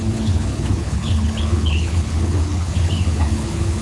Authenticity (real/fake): fake